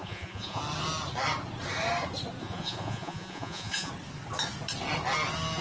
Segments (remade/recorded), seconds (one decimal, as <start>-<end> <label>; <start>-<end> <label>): 0.0-0.6 remade; 0.6-2.4 recorded; 2.4-3.9 remade; 3.9-5.6 recorded